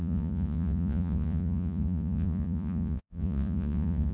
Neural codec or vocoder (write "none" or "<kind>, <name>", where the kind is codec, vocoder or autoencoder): vocoder, Vocos